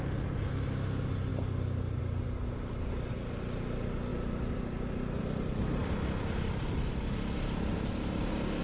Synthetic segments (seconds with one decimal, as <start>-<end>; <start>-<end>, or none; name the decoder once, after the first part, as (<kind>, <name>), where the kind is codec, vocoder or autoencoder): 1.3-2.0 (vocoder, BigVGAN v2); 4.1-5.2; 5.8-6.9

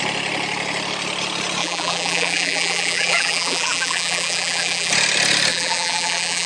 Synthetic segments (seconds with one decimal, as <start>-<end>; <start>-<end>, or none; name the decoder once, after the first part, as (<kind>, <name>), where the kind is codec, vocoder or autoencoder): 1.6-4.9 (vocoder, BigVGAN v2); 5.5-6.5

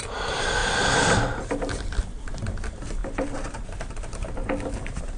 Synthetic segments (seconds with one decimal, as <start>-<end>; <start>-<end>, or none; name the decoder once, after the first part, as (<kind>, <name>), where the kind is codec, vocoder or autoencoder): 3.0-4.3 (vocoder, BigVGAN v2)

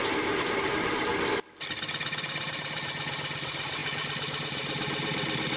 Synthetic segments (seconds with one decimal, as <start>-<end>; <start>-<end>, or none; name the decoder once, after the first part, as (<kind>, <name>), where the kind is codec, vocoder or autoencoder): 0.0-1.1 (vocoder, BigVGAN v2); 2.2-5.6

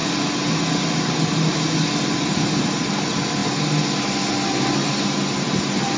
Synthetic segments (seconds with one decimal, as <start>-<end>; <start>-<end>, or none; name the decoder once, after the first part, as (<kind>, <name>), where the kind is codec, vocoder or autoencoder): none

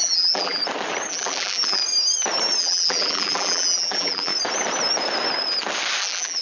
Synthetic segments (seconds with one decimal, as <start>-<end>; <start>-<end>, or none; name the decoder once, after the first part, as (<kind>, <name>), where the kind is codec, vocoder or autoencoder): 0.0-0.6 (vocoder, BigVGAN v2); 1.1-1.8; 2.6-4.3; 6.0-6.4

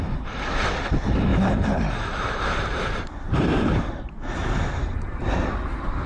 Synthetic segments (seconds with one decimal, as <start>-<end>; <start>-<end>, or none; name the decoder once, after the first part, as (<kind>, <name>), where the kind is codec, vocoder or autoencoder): 1.3-3.8 (vocoder, BigVGAN v2); 4.4-5.2

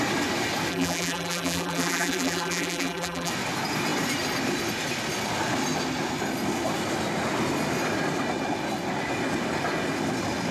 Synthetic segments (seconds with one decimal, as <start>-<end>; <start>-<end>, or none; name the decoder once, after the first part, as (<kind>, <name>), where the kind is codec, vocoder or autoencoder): 0.7-3.3 (vocoder, BigVGAN v2)